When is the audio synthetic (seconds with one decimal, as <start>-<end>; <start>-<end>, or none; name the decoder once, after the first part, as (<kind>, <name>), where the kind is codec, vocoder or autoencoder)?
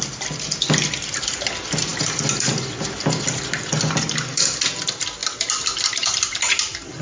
5.2-6.5 (vocoder, BigVGAN v2)